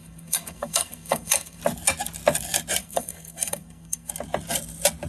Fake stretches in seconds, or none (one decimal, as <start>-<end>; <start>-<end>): 0.0-1.6; 2.8-4.1